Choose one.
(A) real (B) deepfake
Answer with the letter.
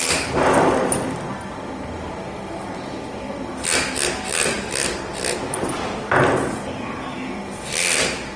A